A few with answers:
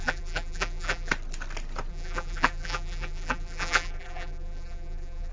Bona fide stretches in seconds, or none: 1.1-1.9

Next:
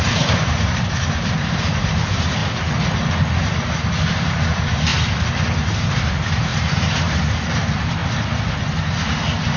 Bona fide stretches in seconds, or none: 2.4-4.1; 4.9-5.6; 8.0-9.6

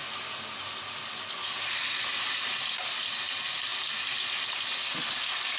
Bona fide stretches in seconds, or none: 0.0-5.6

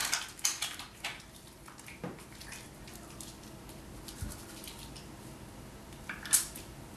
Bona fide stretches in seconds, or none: 0.0-7.0